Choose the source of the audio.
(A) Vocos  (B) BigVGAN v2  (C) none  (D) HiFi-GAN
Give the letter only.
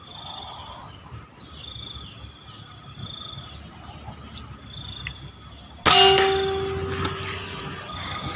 C